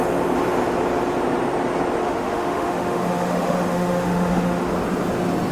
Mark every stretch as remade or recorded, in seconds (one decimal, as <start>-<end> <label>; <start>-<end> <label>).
0.0-2.0 recorded; 2.0-4.7 remade; 4.7-5.5 recorded

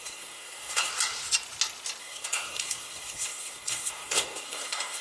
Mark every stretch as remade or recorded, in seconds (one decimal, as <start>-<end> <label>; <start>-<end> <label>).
0.0-0.9 remade; 0.9-2.0 recorded; 2.0-5.0 remade

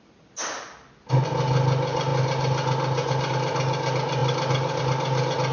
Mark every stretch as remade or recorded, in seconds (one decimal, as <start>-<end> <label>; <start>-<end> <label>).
0.0-5.5 recorded

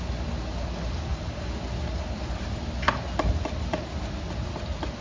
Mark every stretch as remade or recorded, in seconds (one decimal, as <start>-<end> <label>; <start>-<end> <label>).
0.0-5.0 recorded

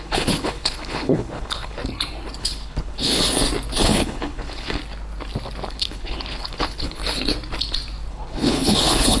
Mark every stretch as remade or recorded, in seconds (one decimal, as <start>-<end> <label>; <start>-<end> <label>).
0.0-1.8 remade; 1.8-2.4 recorded; 2.4-3.2 remade; 3.2-3.8 recorded; 3.8-4.8 remade; 4.8-5.7 recorded; 5.7-7.0 remade; 7.0-8.1 recorded; 8.1-9.2 remade